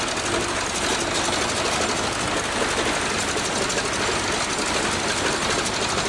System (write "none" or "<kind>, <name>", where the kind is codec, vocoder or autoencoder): none